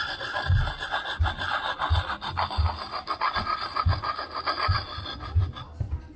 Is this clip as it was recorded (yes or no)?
yes